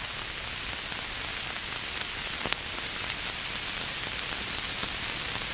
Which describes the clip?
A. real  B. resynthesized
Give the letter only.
A